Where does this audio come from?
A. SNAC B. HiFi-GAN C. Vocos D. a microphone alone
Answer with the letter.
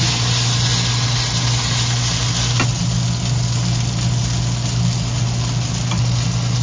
D